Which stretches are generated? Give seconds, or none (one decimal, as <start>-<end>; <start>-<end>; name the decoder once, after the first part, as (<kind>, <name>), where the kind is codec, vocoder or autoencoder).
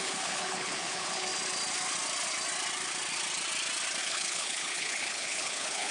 0.0-1.3 (codec, HILCodec); 4.0-5.9